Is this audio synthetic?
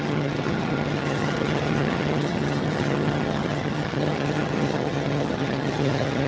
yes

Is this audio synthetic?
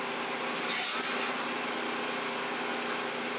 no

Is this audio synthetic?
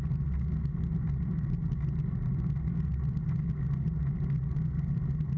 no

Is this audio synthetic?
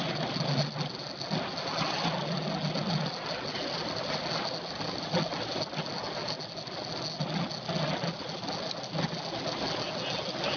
no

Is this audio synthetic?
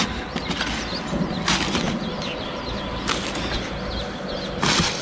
no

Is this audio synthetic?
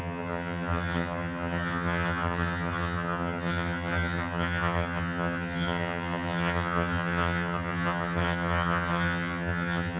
yes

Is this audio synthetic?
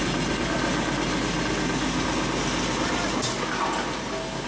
no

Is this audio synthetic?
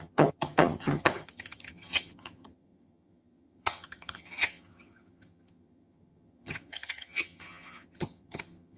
yes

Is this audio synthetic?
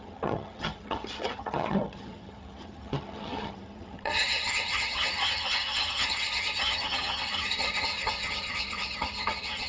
yes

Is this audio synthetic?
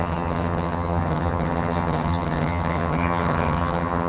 yes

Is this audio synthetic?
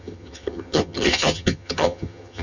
yes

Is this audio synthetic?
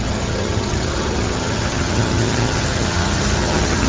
yes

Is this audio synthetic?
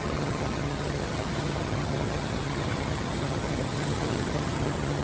yes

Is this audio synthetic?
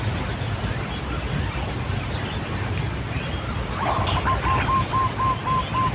no